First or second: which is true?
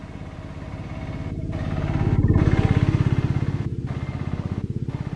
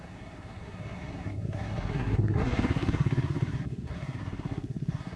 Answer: first